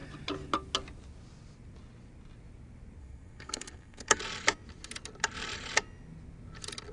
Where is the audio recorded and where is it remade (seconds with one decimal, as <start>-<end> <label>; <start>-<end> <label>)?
0.0-3.0 recorded; 3.0-4.2 remade; 4.2-6.9 recorded